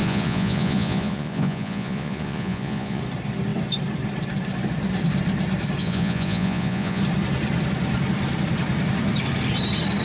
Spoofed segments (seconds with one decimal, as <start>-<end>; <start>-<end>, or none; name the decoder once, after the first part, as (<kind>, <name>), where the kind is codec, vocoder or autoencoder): 0.0-3.0 (vocoder, Vocos); 5.8-7.0